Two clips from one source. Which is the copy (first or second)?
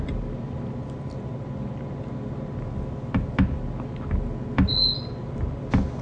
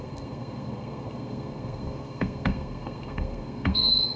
second